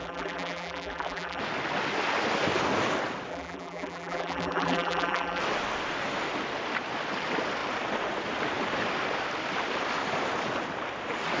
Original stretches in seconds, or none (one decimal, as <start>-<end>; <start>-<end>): 1.4-3.3; 5.4-11.4